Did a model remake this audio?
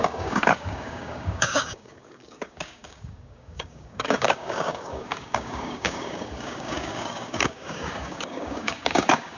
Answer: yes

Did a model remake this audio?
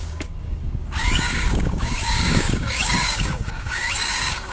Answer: yes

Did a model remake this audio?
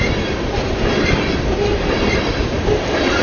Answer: no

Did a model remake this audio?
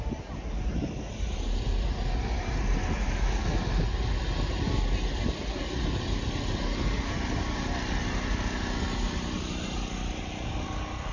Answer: no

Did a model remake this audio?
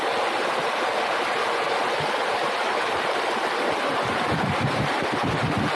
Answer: no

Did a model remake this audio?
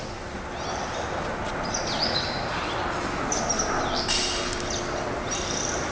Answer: no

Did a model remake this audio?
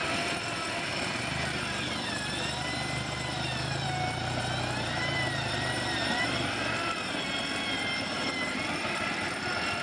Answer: no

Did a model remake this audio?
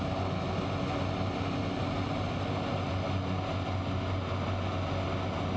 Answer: no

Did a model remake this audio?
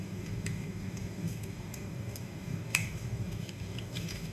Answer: yes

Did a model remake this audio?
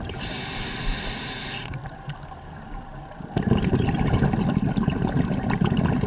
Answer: no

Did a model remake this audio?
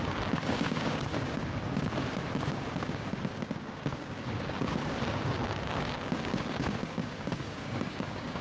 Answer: yes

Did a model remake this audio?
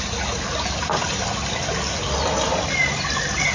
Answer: no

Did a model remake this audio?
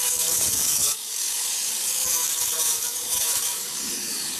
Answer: yes